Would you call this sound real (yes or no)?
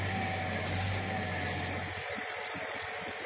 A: yes